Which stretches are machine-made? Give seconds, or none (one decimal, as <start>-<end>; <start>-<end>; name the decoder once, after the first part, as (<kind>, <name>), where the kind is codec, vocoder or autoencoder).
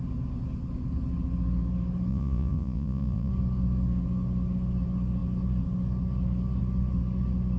2.1-3.3 (vocoder, Vocos)